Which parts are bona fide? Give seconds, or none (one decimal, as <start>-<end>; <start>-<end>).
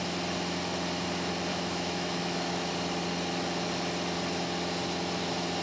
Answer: 0.0-1.5; 2.7-5.6